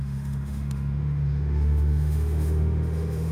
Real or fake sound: fake